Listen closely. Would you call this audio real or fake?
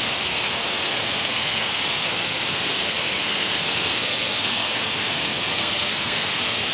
fake